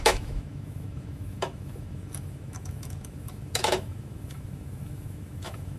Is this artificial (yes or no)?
yes